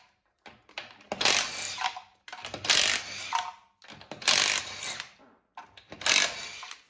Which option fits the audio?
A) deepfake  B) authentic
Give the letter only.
B